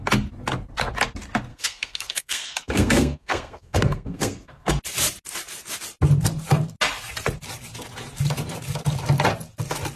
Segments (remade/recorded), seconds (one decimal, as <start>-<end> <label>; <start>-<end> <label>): 0.0-1.5 recorded; 1.5-4.7 remade; 4.7-10.0 recorded